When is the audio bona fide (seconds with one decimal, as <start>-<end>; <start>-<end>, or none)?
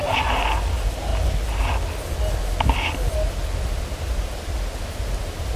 0.0-5.6